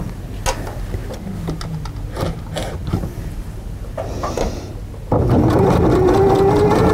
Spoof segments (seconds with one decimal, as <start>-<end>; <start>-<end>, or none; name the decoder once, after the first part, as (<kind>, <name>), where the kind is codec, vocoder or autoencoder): 2.8-4.7 (vocoder, BigVGAN v2)